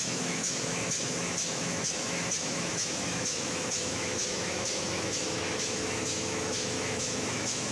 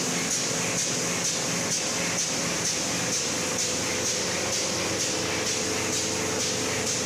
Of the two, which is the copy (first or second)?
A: first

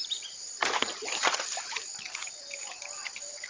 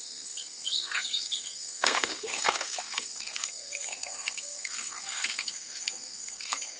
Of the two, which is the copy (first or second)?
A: second